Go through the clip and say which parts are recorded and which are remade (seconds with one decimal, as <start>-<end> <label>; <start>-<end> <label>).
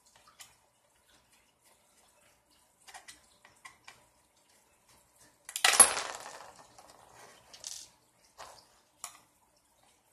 0.0-10.1 recorded